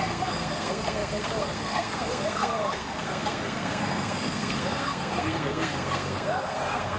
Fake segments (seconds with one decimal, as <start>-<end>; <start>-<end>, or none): 0.0-7.0